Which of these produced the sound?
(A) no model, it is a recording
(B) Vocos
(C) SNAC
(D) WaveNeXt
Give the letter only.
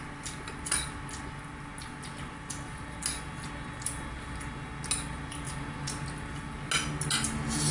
A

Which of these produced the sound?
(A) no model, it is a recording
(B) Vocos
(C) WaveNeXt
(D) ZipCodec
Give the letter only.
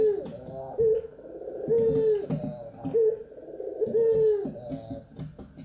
A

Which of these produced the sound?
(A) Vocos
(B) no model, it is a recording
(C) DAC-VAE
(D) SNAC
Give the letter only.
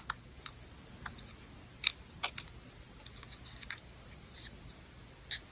B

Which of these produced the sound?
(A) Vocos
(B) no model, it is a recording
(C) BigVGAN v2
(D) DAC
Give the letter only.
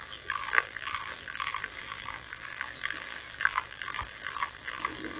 C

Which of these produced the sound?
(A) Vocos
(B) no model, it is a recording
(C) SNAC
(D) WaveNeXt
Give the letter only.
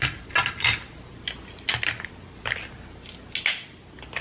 B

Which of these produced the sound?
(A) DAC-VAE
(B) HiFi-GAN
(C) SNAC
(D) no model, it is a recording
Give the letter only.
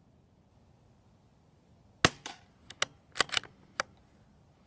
D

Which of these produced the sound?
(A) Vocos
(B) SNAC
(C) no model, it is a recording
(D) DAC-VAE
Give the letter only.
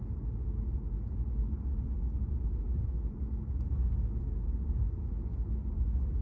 C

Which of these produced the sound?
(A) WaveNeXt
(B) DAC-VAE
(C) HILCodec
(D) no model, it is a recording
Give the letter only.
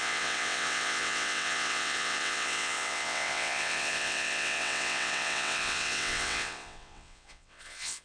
A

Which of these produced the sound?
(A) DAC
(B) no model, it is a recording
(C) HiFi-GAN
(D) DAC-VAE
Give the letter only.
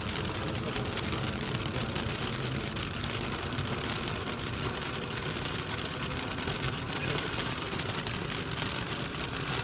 B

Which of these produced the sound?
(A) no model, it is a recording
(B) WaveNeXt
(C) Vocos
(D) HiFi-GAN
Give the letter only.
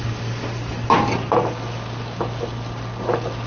A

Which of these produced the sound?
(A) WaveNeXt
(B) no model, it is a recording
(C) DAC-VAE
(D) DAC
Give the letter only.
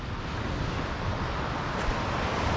B